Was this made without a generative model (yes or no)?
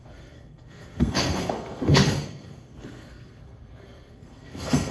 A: no